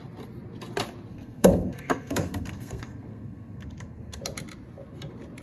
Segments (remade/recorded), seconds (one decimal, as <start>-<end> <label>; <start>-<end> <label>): 0.0-1.1 recorded; 1.1-4.2 remade; 4.2-5.4 recorded